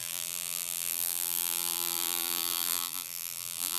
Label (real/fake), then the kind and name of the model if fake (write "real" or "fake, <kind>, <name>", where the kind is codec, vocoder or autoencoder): fake, vocoder, BigVGAN v2